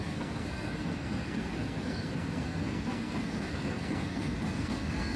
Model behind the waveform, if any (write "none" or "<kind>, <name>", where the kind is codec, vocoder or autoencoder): codec, SNAC